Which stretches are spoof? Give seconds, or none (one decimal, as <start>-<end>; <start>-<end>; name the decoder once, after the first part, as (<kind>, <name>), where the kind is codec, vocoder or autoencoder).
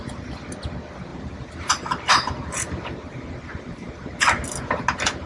1.1-4.3 (vocoder, BigVGAN v2)